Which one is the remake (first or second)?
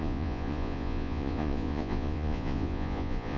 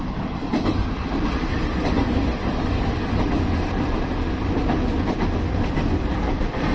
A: first